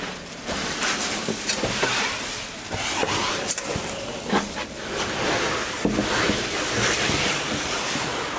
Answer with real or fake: real